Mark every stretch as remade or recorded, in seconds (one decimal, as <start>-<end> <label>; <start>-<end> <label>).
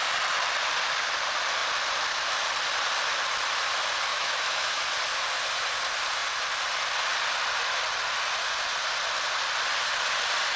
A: 0.0-4.1 recorded; 4.1-4.8 remade; 4.8-10.6 recorded